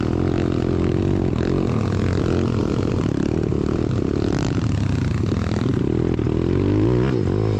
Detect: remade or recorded recorded